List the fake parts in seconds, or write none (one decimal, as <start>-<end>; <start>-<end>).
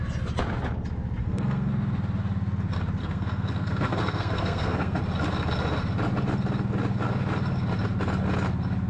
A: 1.2-1.7; 3.0-5.0